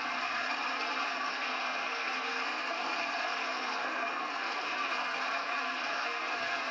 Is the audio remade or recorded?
remade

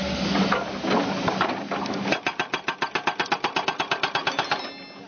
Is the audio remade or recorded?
recorded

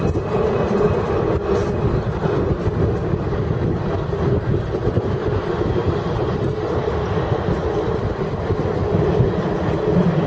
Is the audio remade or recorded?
recorded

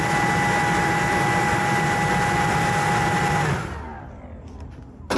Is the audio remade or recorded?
recorded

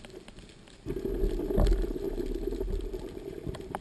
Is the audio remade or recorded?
recorded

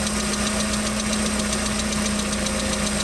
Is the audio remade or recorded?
recorded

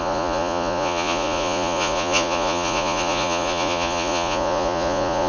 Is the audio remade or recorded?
remade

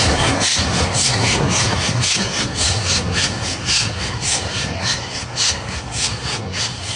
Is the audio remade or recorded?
remade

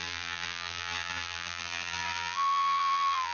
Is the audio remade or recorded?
remade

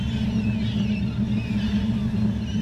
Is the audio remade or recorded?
recorded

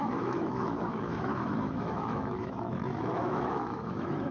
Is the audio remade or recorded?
remade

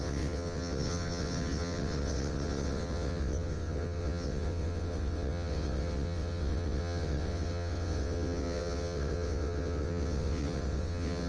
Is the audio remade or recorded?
remade